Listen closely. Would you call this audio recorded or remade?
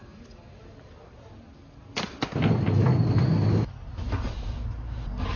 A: recorded